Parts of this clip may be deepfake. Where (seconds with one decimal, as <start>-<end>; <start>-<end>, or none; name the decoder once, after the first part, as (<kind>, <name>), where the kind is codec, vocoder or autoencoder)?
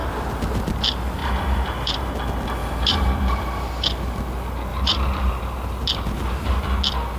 0.0-0.7 (vocoder, BigVGAN v2); 1.2-2.1; 2.6-3.7; 4.7-6.6